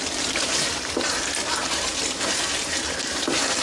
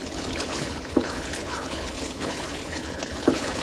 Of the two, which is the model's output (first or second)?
second